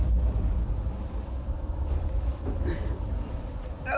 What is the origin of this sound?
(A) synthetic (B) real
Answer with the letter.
B